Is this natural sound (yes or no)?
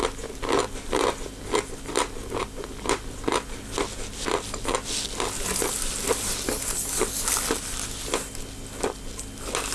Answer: yes